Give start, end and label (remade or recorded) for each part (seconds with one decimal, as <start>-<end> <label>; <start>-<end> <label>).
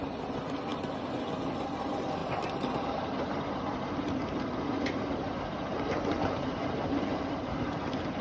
0.0-2.2 recorded; 2.2-2.9 remade; 2.9-5.7 recorded; 5.7-8.2 remade